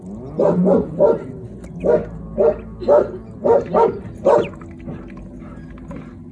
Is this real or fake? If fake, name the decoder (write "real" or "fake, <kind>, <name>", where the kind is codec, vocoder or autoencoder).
real